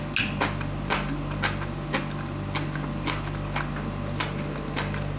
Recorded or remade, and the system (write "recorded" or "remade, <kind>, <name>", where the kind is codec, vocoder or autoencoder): recorded